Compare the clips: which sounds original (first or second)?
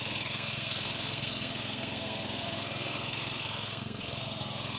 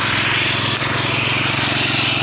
second